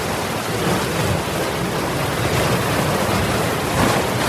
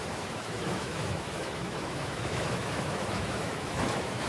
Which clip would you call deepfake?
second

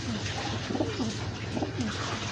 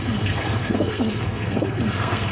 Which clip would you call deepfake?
second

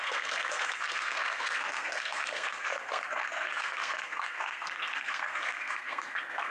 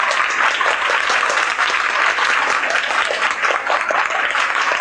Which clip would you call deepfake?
first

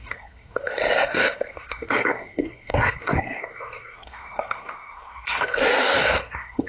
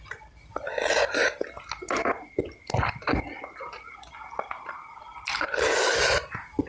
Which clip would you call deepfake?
first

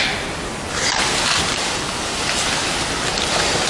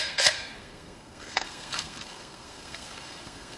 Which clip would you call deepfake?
second